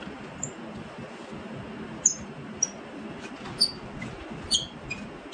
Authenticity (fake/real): real